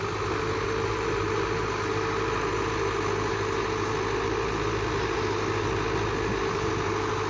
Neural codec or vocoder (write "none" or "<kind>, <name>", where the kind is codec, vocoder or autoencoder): none